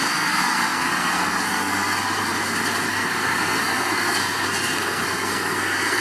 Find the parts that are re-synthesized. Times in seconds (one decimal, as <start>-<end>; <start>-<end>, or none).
0.0-2.3; 2.9-6.0